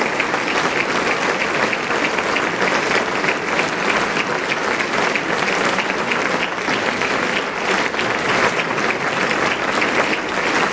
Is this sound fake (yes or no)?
no